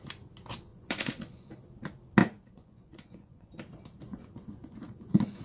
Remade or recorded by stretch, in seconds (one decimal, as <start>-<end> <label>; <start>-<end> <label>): 0.0-0.7 recorded; 0.7-1.5 remade; 1.5-2.2 recorded; 2.2-3.5 remade; 3.5-4.1 recorded; 4.1-5.4 remade